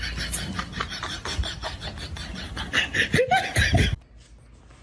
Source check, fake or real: real